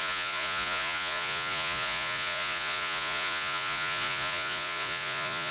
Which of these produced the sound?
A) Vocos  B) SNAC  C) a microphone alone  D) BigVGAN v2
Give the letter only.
A